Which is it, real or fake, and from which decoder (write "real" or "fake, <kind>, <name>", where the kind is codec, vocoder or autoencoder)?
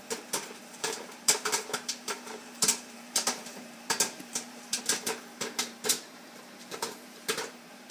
fake, vocoder, BigVGAN v2